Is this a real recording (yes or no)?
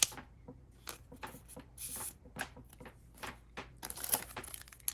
no